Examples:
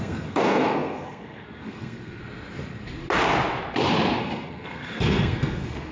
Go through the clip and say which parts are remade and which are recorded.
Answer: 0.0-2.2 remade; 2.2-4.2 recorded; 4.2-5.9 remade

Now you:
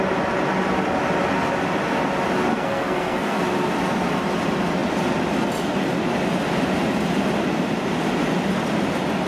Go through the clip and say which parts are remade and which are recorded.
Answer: 0.0-2.5 recorded; 2.5-3.4 remade; 3.4-9.3 recorded

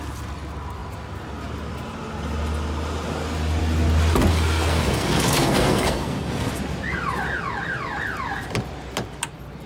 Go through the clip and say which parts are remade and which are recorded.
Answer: 0.0-4.3 recorded; 4.3-6.6 remade; 6.6-9.7 recorded

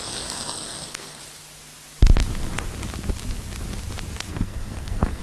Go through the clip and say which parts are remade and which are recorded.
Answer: 0.0-1.2 remade; 1.2-4.3 recorded; 4.3-5.2 remade